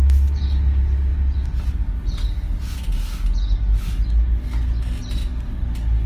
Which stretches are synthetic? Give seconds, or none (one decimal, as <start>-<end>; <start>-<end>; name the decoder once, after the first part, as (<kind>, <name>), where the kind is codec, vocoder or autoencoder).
none